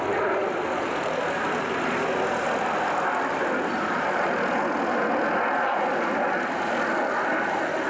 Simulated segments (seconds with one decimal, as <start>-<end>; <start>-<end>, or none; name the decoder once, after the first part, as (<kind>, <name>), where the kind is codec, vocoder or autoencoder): 0.4-2.0 (vocoder, BigVGAN v2)